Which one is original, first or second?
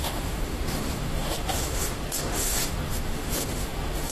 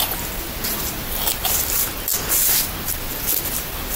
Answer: second